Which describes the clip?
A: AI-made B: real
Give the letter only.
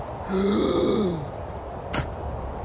B